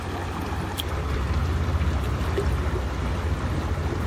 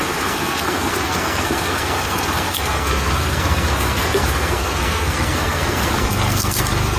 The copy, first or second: second